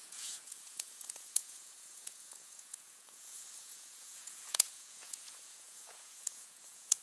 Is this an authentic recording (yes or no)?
no